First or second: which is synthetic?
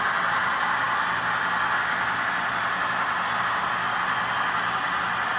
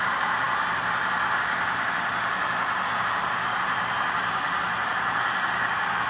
second